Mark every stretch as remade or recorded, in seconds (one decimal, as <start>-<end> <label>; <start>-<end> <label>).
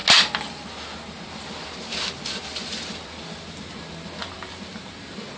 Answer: 0.0-5.4 recorded